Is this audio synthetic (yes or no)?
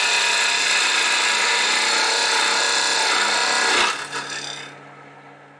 no